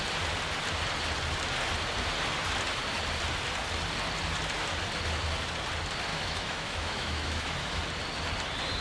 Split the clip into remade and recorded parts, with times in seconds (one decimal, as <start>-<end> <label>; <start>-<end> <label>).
0.0-6.1 recorded; 6.1-7.8 remade; 7.8-8.8 recorded